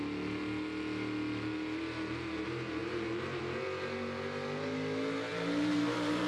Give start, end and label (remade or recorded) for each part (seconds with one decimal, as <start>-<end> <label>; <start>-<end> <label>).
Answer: 0.0-2.8 recorded; 2.8-3.4 remade; 3.4-5.3 recorded; 5.3-6.3 remade

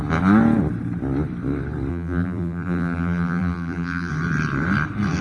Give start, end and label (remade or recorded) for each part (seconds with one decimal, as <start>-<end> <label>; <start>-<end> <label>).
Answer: 0.0-1.9 recorded; 1.9-4.1 remade; 4.1-5.2 recorded

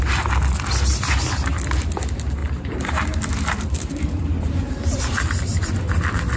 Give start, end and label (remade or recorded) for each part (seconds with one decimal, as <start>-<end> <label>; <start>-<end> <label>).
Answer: 0.0-2.4 recorded; 2.4-5.0 remade; 5.0-6.4 recorded